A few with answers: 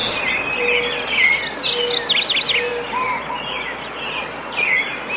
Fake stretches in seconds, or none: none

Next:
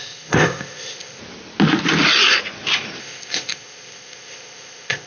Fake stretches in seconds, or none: 0.0-1.2; 3.0-5.1